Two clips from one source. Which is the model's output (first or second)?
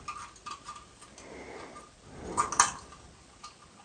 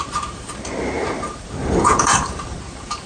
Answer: second